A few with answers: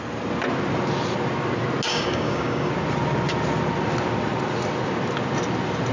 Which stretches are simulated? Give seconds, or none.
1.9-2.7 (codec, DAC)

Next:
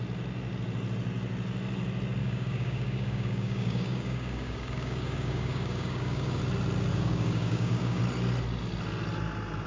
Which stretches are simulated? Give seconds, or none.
2.2-6.4 (codec, DAC); 6.9-8.0